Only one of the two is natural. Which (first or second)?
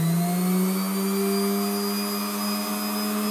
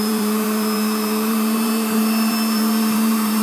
first